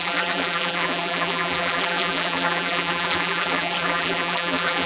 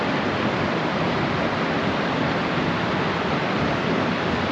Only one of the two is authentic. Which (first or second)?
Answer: second